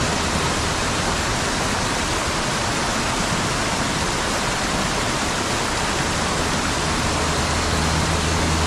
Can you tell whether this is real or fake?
real